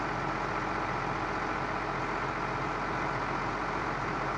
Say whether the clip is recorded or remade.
recorded